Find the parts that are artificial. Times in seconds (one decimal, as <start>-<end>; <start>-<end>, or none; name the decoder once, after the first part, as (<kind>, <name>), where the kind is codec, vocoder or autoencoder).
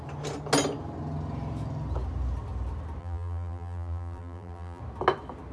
3.0-4.8 (vocoder, BigVGAN v2)